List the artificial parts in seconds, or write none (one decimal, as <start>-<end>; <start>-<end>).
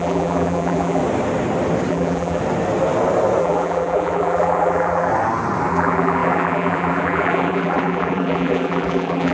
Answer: 0.0-1.0; 1.9-2.4; 3.4-5.1; 5.7-9.3